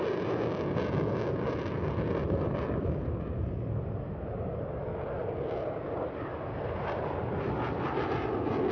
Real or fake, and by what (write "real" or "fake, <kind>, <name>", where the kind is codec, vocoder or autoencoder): real